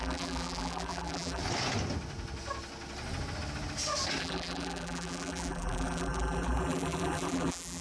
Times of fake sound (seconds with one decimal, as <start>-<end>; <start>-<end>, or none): 0.0-1.4; 4.2-7.8